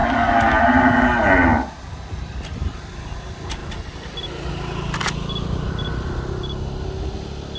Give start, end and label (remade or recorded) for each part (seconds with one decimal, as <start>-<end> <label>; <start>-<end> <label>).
0.0-7.6 recorded